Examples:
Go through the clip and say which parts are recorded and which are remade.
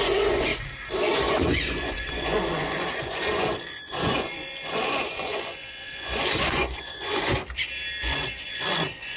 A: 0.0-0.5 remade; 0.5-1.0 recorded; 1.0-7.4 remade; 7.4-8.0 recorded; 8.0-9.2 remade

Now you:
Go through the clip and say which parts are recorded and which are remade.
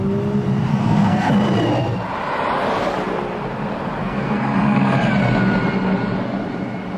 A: 0.0-0.7 recorded; 0.7-1.3 remade; 1.3-4.0 recorded; 4.0-5.1 remade; 5.1-7.0 recorded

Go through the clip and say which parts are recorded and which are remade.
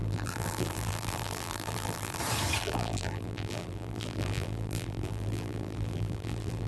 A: 0.0-2.2 remade; 2.2-2.6 recorded; 2.6-6.7 remade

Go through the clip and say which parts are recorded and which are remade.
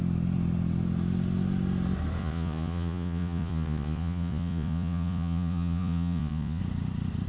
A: 0.0-2.2 recorded; 2.2-6.6 remade; 6.6-7.3 recorded